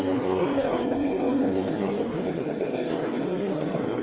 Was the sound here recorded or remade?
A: remade